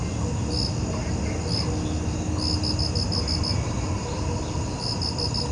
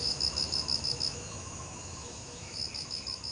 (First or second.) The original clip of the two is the first